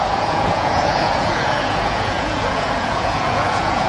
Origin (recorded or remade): remade